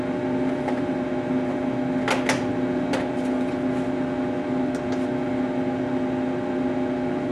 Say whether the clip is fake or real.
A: real